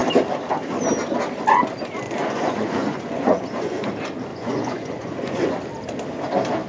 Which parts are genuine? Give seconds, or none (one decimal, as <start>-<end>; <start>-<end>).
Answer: 0.0-2.2; 3.9-4.3; 5.6-6.7